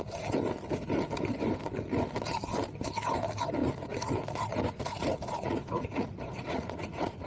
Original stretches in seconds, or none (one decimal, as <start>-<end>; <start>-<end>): 0.0-3.6; 4.1-4.5